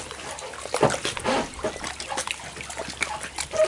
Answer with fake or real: real